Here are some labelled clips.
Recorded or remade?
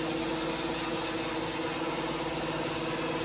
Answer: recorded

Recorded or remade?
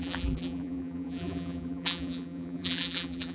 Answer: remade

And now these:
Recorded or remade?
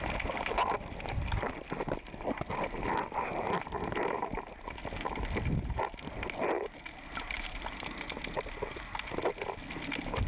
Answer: recorded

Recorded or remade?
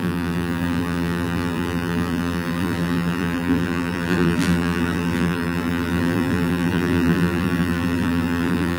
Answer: remade